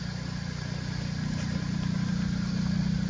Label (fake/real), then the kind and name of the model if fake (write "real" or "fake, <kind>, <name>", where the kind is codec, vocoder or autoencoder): real